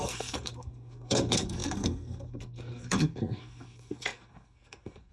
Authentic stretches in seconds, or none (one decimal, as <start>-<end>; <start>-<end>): none